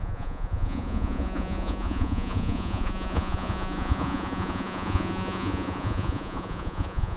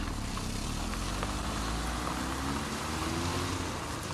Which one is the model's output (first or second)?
first